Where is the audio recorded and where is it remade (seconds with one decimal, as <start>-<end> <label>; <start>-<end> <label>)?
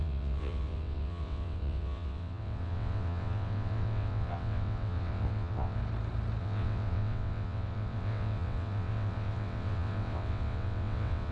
0.0-5.8 remade; 5.8-6.4 recorded; 6.4-11.3 remade